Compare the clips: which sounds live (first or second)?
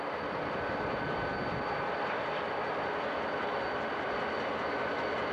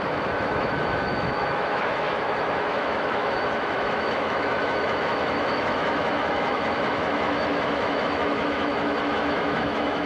first